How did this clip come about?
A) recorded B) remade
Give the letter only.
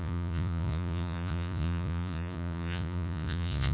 B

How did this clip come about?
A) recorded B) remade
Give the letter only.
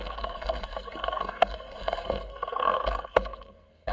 B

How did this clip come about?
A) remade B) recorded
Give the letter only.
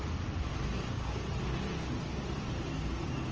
B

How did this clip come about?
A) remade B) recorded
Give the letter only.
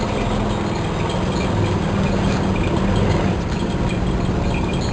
B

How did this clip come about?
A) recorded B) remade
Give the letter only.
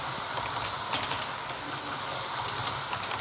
A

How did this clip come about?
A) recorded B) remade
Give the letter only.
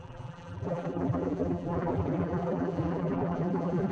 B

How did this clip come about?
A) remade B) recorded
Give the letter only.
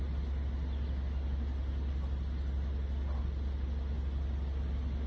B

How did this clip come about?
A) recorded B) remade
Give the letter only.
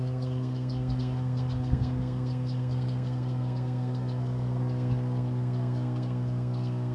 B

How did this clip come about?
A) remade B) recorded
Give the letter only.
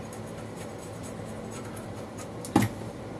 B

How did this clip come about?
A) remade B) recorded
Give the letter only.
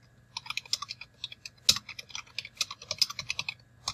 B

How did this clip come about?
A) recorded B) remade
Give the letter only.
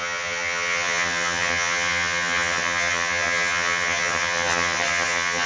B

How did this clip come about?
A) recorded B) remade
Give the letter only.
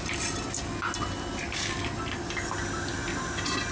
A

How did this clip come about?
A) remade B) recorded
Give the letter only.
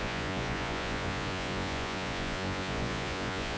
A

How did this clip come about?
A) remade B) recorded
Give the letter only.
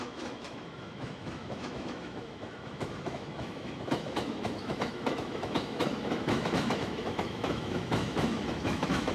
A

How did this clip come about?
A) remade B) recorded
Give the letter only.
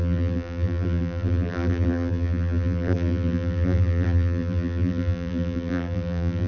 A